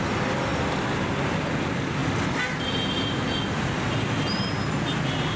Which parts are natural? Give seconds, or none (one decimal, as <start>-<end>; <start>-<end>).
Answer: 0.0-5.4